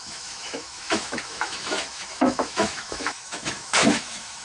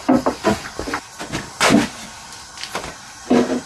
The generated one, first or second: first